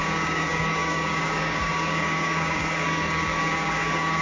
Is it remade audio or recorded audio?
remade